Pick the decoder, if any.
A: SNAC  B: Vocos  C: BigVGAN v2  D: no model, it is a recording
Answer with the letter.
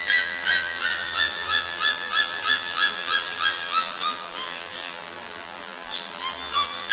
C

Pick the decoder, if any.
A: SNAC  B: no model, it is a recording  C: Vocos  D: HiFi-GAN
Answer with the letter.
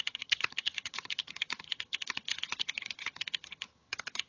D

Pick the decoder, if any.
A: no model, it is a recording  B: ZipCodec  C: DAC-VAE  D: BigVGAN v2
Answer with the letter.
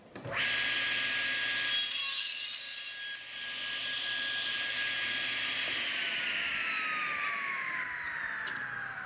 A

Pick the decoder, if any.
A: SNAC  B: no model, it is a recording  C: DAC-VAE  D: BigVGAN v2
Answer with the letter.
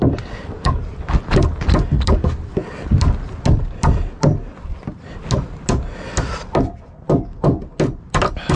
B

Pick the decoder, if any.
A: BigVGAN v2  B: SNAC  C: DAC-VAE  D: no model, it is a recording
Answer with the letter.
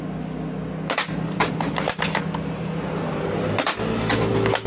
D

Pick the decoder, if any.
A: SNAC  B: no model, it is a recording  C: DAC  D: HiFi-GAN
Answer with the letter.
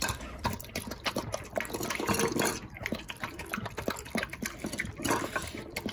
B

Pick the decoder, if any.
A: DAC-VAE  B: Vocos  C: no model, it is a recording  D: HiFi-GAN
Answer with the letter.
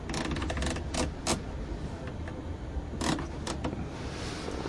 C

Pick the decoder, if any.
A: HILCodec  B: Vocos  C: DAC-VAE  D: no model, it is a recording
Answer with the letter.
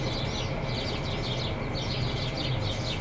D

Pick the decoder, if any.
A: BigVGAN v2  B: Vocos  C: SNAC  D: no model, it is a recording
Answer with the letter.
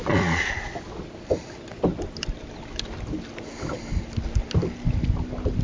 D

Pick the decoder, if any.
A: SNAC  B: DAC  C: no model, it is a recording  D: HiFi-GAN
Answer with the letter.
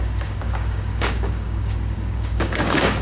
B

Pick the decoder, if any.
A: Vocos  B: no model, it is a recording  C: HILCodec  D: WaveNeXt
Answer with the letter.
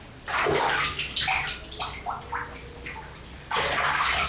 B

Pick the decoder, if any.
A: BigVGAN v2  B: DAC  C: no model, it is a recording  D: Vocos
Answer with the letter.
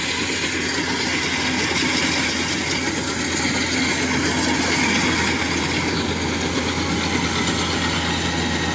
C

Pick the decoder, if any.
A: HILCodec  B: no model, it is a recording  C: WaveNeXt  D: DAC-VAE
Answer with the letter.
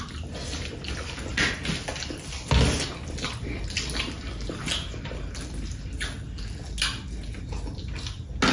B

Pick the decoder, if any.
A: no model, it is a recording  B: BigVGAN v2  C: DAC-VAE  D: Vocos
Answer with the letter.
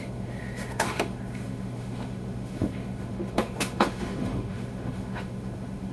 C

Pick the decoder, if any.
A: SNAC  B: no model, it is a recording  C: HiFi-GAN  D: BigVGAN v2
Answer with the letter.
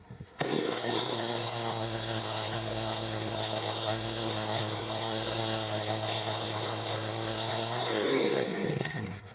A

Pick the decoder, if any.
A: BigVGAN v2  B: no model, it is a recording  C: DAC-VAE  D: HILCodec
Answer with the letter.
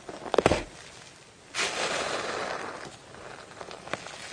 B